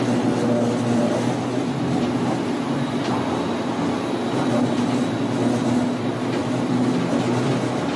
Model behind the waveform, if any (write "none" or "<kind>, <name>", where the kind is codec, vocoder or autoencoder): none